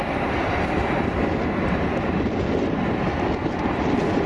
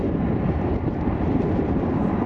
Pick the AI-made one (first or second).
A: second